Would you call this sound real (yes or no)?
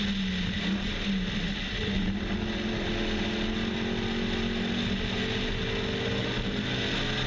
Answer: yes